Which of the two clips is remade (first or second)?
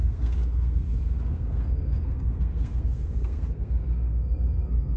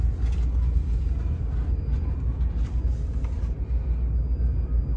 first